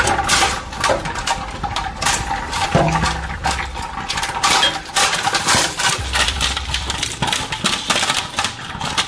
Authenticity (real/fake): fake